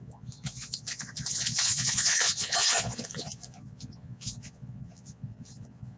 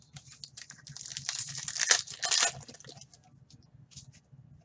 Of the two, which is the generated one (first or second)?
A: first